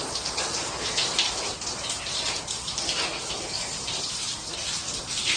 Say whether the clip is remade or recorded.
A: remade